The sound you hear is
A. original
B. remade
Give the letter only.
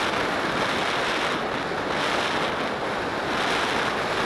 A